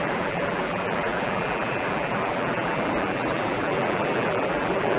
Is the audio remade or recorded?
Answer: remade